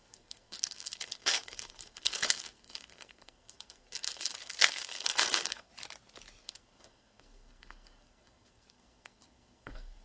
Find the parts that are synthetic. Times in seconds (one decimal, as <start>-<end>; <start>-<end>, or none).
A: 0.0-5.7; 6.4-10.0